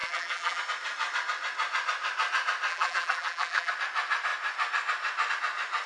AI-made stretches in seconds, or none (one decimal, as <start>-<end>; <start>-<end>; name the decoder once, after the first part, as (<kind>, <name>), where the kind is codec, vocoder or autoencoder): 0.0-0.6 (vocoder, BigVGAN v2); 2.7-3.7